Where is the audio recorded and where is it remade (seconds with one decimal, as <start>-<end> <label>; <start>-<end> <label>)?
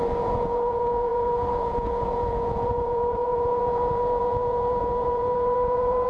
0.0-6.1 remade